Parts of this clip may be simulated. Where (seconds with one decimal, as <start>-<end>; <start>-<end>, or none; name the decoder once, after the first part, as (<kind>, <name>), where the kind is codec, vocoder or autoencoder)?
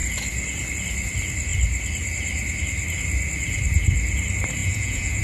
4.6-5.2 (vocoder, Vocos)